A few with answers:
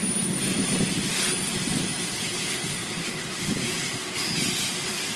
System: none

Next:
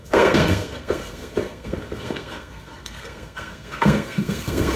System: codec, SNAC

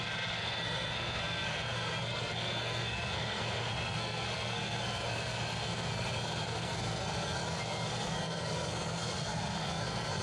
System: codec, SNAC